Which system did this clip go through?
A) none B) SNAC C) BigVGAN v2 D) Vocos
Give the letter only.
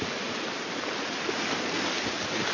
A